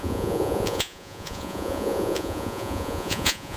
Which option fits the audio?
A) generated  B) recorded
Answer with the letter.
A